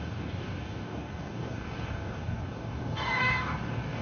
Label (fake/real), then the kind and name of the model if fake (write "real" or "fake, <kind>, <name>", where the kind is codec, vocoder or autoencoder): fake, codec, DAC